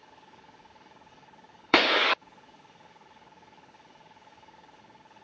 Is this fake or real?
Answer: fake